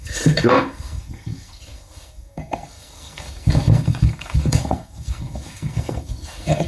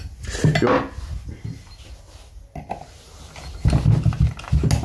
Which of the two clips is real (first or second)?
second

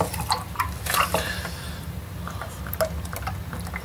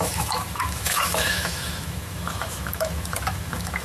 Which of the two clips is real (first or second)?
first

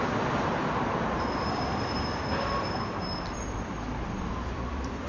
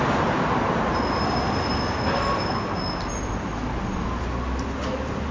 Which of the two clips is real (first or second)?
second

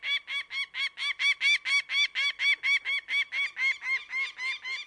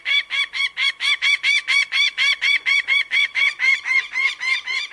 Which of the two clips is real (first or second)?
first